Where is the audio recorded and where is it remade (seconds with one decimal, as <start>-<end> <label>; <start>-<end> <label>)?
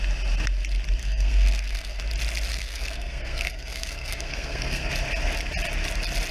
0.0-1.0 recorded; 1.0-2.0 remade; 2.0-2.5 recorded; 2.5-4.9 remade; 4.9-6.3 recorded